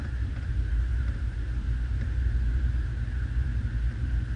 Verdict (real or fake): fake